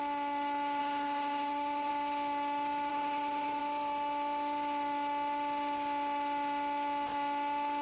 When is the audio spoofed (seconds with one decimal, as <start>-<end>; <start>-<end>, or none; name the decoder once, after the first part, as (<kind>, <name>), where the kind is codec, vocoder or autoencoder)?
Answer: 0.8-1.9 (autoencoder, DAC-VAE); 2.9-3.6